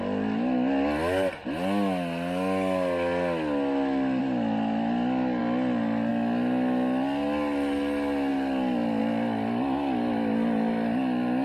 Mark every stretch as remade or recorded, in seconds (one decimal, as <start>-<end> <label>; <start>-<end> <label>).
0.0-11.4 recorded